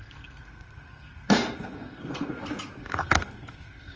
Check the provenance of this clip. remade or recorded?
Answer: remade